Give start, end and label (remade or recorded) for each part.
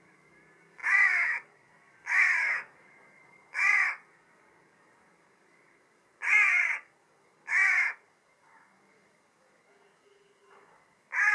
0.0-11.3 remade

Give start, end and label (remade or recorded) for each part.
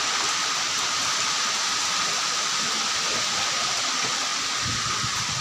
0.0-5.4 recorded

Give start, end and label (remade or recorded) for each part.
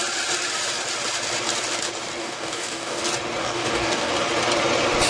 0.0-2.2 recorded; 2.2-3.0 remade; 3.0-3.4 recorded; 3.4-4.1 remade; 4.1-5.1 recorded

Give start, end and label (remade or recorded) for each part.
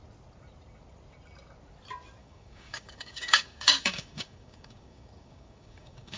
0.0-2.2 recorded; 2.2-6.2 remade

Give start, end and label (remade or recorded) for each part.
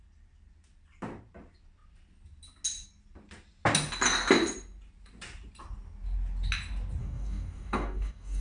0.0-7.0 recorded; 7.0-8.4 remade